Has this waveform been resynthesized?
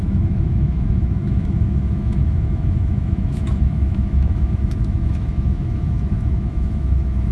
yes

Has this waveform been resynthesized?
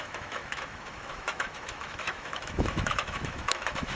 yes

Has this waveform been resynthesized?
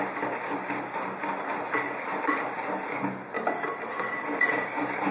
no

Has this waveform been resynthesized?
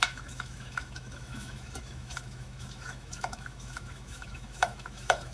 yes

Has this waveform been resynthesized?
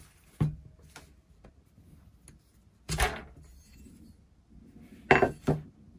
no